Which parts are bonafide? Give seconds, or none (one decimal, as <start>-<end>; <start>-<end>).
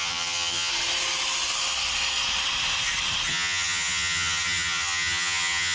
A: 0.7-3.3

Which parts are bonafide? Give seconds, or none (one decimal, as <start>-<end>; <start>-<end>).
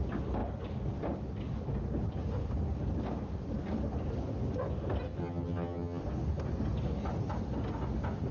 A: 0.0-5.2; 6.0-8.3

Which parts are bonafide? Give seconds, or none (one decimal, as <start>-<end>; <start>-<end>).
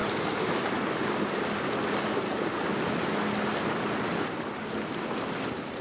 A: 0.0-5.8